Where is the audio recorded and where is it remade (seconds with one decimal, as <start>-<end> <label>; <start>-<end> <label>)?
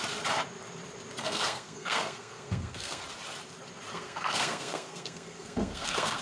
0.0-1.2 recorded; 1.2-3.0 remade; 3.0-3.9 recorded; 3.9-6.2 remade